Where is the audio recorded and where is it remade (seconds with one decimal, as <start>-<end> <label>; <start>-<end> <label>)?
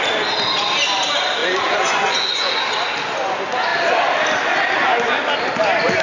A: 0.0-1.4 recorded; 1.4-2.5 remade; 2.5-6.0 recorded